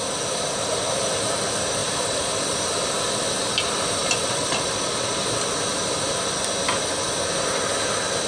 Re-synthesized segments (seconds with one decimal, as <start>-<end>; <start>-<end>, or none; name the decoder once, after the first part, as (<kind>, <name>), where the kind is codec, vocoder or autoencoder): 1.8-2.3 (vocoder, BigVGAN v2)